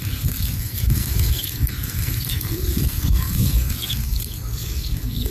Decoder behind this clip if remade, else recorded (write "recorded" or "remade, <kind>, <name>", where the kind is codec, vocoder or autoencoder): remade, codec, SNAC